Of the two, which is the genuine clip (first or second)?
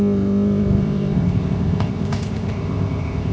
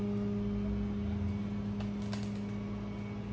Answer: second